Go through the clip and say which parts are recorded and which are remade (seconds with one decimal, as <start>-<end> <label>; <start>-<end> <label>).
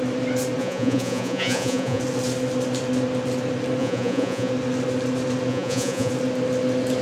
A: 0.0-0.6 recorded; 0.6-2.0 remade; 2.0-3.8 recorded; 3.8-4.5 remade; 4.5-5.5 recorded; 5.5-6.1 remade; 6.1-7.0 recorded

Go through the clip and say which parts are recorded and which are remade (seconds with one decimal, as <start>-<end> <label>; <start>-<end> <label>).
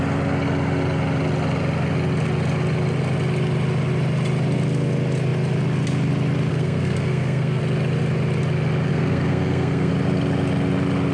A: 0.0-6.5 recorded; 6.5-7.6 remade; 7.6-8.9 recorded; 8.9-9.9 remade; 9.9-11.1 recorded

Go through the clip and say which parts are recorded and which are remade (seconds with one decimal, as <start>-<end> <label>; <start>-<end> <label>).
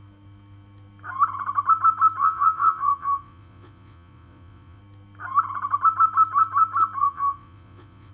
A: 0.0-2.2 recorded; 2.2-4.8 remade; 4.8-7.0 recorded; 7.0-8.1 remade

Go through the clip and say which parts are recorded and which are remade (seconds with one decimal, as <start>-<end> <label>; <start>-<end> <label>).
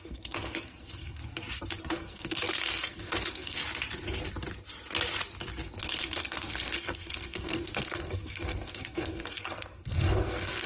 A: 0.0-1.2 remade; 1.2-1.8 recorded; 1.8-3.6 remade; 3.6-5.8 recorded; 5.8-10.7 remade